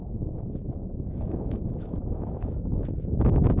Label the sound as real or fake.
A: fake